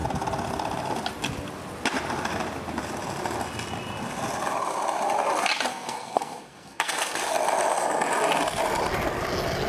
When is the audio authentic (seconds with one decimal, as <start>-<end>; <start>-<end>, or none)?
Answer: 0.0-5.7; 7.2-9.7